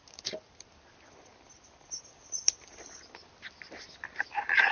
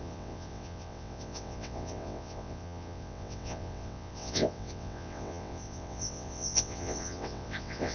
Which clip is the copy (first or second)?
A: second